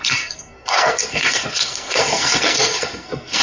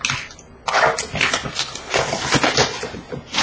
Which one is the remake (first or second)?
first